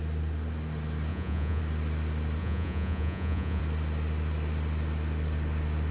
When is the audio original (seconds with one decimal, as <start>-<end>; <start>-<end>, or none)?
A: 0.0-1.1; 1.6-2.4; 3.6-5.9